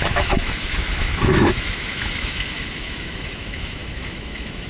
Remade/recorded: remade